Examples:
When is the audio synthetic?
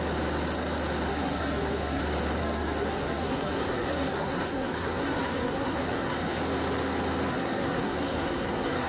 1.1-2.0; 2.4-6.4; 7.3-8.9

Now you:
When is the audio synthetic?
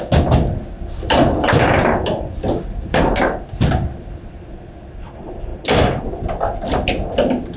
none